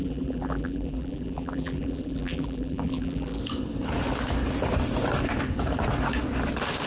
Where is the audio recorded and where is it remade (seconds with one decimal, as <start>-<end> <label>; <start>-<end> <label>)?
0.0-3.4 remade; 3.4-6.9 recorded